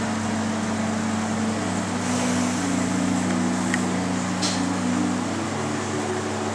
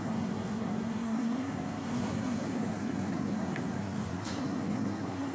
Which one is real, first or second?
first